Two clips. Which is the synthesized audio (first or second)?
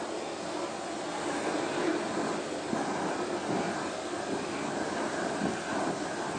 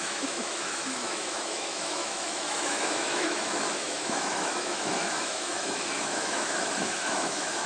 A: second